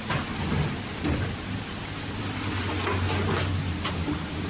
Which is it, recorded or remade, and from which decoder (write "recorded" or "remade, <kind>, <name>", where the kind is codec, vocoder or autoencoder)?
recorded